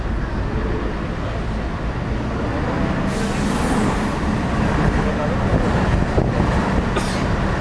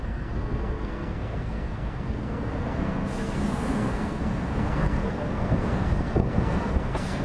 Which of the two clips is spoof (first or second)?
second